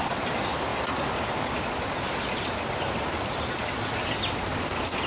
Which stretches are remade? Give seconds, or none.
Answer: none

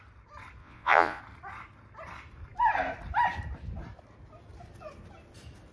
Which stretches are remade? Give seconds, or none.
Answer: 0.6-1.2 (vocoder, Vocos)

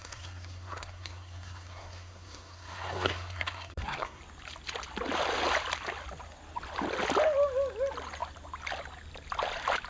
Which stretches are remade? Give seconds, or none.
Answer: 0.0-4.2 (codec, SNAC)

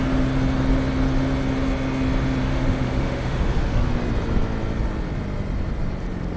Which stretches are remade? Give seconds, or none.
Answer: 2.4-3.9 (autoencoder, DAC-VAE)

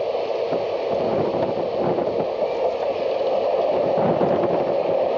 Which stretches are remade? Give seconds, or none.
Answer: none

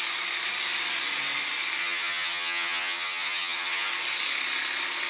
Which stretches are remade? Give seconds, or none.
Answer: 1.8-3.9 (vocoder, HiFi-GAN)

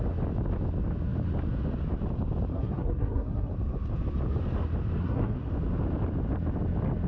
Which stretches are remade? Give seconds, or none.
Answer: 2.5-3.5 (codec, SNAC); 5.0-5.5

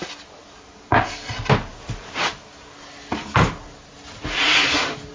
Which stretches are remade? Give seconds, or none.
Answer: none